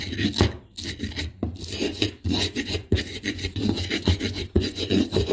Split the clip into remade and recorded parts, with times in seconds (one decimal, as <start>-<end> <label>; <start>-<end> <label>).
0.0-1.9 recorded; 1.9-5.3 remade